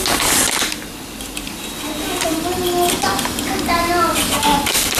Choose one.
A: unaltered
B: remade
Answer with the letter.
A